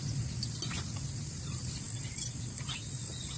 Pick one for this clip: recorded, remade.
recorded